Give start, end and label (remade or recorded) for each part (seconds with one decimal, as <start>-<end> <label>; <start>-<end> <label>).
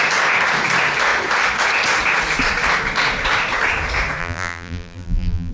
0.0-4.2 recorded; 4.2-5.5 remade